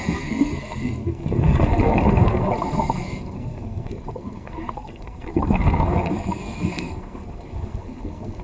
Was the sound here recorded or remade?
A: remade